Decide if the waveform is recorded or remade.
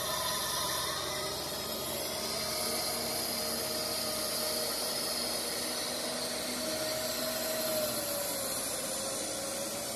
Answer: recorded